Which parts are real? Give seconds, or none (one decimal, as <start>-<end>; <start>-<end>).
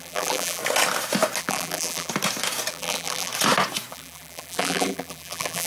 0.6-1.4; 2.1-2.7; 3.3-3.9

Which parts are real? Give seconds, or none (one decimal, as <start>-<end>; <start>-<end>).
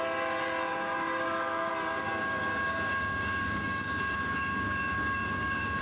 0.0-0.7; 1.7-2.1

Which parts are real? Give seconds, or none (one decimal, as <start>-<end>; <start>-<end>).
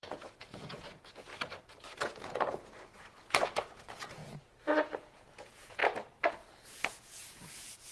1.3-2.0; 4.2-5.0; 5.8-6.3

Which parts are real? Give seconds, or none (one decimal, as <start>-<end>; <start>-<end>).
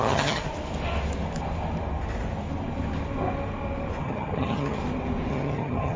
0.4-4.0; 4.8-5.3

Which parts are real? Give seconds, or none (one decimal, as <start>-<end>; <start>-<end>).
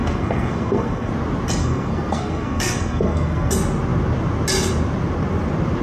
1.1-1.6; 3.5-5.8